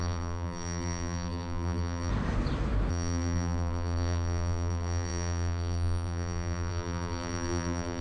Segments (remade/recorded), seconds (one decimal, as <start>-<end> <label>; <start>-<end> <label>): 0.0-2.1 remade; 2.1-2.9 recorded; 2.9-8.0 remade